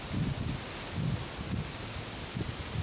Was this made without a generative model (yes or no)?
yes